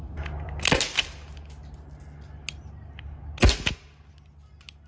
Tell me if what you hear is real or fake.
real